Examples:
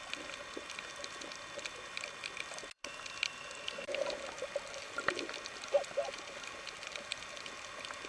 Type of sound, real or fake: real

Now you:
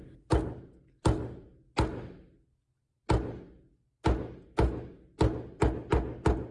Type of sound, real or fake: real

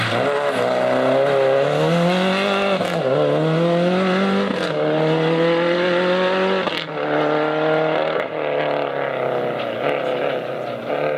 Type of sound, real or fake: real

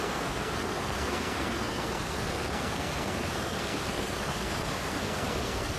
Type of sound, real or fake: fake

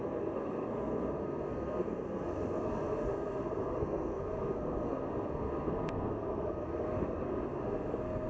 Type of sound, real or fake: fake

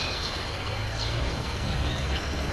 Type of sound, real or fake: fake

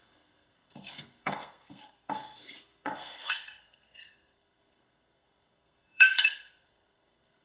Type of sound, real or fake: fake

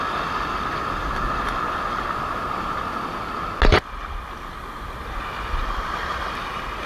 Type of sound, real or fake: real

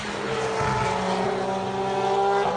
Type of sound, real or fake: real